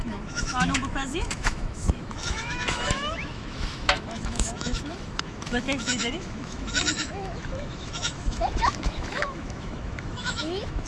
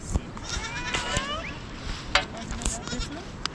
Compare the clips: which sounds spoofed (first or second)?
first